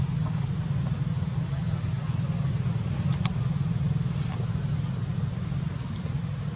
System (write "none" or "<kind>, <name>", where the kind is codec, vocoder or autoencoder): none